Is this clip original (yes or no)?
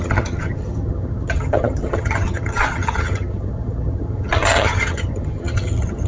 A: no